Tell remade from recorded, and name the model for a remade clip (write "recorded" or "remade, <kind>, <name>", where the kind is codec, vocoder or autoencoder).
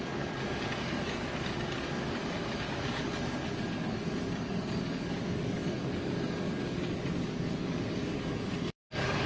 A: remade, codec, DAC